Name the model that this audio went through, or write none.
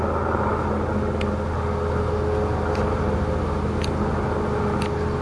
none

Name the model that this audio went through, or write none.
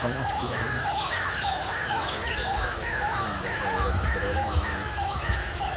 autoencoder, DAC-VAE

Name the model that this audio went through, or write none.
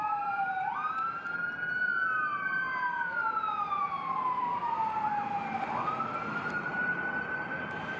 none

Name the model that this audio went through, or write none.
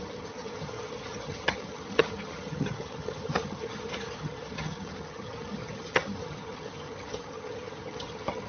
vocoder, HiFi-GAN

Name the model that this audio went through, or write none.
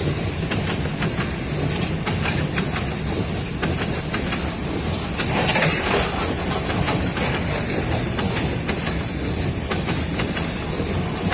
none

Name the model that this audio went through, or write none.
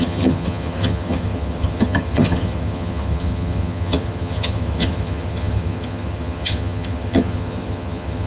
vocoder, HiFi-GAN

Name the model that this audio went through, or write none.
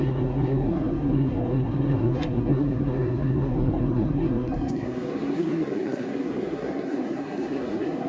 codec, SNAC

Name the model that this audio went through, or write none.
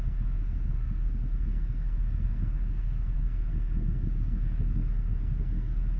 codec, SNAC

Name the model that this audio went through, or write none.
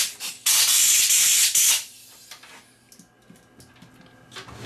none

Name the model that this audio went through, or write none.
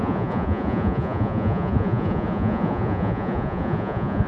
vocoder, Vocos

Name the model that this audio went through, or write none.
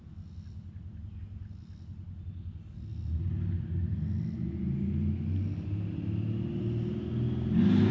none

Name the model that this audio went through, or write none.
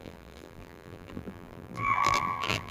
vocoder, BigVGAN v2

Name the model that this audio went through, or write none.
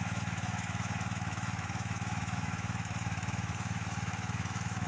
autoencoder, DAC-VAE